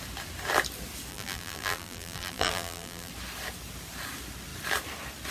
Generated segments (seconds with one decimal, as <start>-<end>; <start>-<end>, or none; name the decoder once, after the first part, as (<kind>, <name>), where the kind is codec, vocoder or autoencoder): 1.1-3.1 (vocoder, BigVGAN v2)